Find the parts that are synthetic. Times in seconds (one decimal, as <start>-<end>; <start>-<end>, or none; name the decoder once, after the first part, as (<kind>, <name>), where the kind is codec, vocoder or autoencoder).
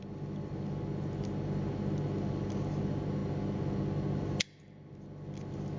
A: none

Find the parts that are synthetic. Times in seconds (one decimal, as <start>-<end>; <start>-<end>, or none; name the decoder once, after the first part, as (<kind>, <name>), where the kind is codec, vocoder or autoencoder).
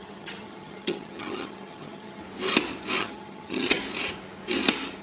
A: 0.0-2.2 (vocoder, HiFi-GAN); 3.0-3.8